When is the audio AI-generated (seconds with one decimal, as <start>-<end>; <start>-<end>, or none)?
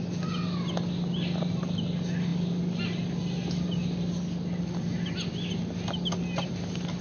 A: none